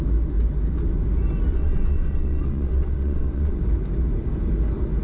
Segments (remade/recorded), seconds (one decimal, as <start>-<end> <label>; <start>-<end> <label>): 0.0-1.5 recorded; 1.5-3.6 remade; 3.6-5.0 recorded